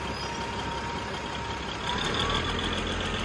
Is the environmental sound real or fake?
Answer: real